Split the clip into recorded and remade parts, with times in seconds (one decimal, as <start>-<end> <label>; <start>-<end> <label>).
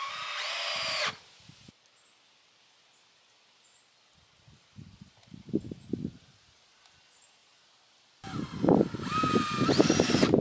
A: 0.0-10.4 recorded